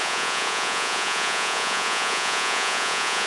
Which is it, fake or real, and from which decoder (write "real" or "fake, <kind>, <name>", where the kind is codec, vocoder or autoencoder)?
fake, vocoder, Vocos